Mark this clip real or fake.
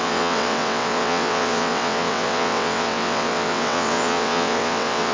fake